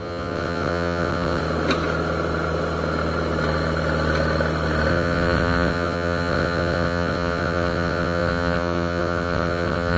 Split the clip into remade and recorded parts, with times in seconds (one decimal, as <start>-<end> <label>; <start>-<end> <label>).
0.0-1.4 remade; 1.4-4.9 recorded; 4.9-10.0 remade